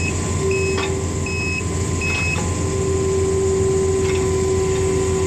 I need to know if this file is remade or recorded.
recorded